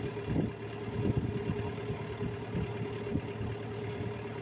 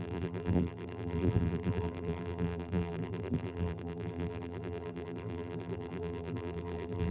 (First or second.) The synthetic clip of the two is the second